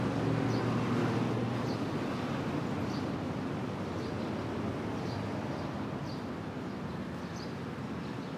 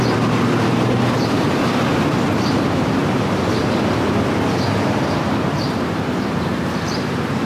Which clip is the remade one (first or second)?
second